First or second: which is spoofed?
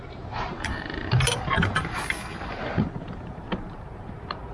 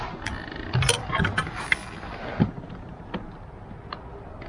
first